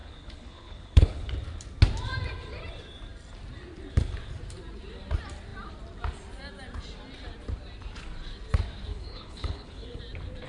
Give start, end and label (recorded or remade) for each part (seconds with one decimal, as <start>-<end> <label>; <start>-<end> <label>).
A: 0.0-1.3 remade; 1.3-8.9 recorded; 8.9-10.0 remade; 10.0-10.5 recorded